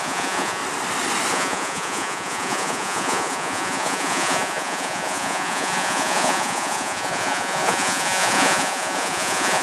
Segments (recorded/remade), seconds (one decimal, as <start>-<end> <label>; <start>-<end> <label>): 0.0-0.6 remade; 0.6-1.3 recorded; 1.3-9.6 remade